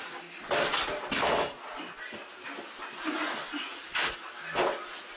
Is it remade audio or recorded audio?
recorded